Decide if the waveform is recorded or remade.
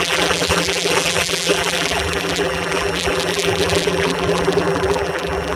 remade